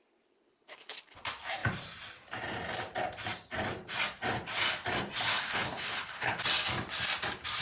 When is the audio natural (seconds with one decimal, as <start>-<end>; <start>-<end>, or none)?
0.0-0.5; 1.2-5.3; 6.4-7.6